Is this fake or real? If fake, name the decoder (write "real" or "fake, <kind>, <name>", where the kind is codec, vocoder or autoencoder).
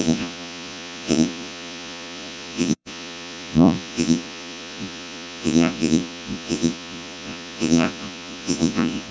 fake, vocoder, Vocos